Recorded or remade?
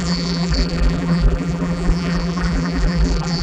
remade